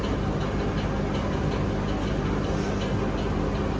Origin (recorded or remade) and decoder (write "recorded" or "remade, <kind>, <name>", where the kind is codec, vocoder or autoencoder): recorded